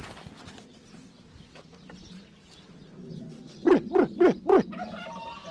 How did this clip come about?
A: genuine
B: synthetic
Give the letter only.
A